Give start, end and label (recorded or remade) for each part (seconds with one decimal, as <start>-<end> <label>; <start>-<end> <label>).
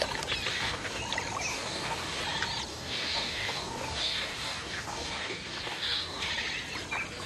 0.0-0.5 recorded; 0.5-1.0 remade; 1.0-1.5 recorded; 1.5-2.2 remade; 2.2-2.7 recorded; 2.7-6.3 remade; 6.3-7.3 recorded